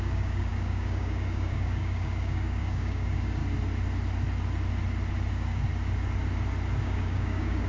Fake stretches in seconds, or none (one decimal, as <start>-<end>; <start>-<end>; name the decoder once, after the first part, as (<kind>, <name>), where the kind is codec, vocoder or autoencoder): 0.0-3.4 (codec, DAC); 5.3-5.7; 6.8-7.7